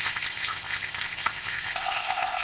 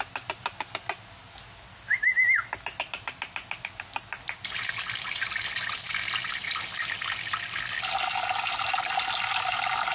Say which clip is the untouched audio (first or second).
second